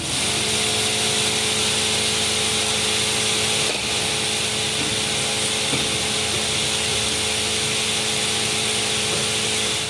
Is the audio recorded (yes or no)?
yes